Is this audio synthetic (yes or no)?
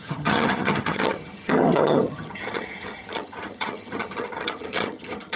yes